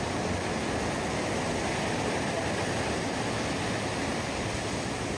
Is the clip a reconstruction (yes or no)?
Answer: no